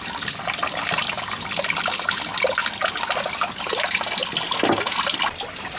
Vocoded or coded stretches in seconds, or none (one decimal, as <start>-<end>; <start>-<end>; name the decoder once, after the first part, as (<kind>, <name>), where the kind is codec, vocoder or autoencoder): none